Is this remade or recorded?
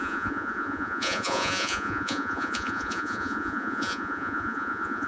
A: remade